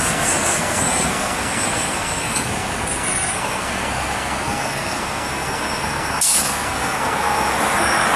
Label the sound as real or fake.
fake